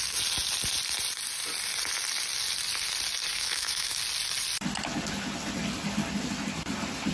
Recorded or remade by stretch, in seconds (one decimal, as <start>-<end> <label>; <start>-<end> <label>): 0.0-3.3 recorded; 3.3-4.0 remade; 4.0-7.1 recorded